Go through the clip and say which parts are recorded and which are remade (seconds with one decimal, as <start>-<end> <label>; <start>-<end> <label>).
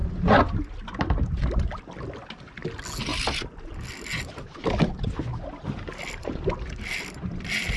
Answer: 0.0-7.8 recorded